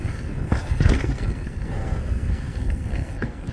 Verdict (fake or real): fake